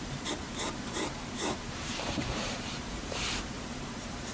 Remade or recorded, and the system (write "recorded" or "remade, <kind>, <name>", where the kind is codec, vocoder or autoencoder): remade, vocoder, BigVGAN v2